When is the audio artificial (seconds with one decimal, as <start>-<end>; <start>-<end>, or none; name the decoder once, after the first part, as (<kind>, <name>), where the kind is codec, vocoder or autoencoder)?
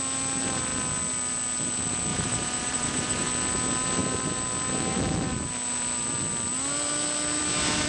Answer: 2.1-3.3 (vocoder, BigVGAN v2)